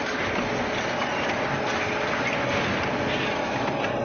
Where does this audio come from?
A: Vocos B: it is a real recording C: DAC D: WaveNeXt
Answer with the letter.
B